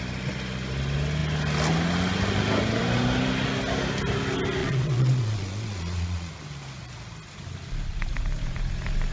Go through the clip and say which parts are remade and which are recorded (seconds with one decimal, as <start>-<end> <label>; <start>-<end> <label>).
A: 0.0-4.6 recorded; 4.6-6.3 remade; 6.3-9.1 recorded